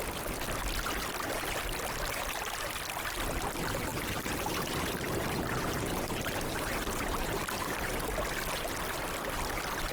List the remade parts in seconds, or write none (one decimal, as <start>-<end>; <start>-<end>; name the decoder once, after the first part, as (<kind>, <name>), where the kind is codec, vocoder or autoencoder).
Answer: 3.9-7.7 (vocoder, BigVGAN v2)